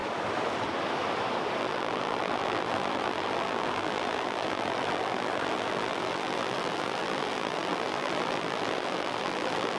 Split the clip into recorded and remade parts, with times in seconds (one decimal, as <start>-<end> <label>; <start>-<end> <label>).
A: 0.0-1.6 recorded; 1.6-9.8 remade